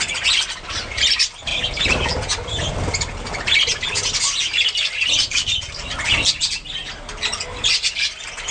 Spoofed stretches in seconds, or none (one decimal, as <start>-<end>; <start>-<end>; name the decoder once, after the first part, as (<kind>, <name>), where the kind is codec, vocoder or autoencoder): none